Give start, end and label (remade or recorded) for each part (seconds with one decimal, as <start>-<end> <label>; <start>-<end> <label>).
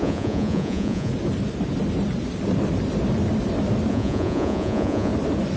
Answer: 0.0-1.1 remade; 1.1-3.9 recorded; 3.9-5.1 remade; 5.1-5.6 recorded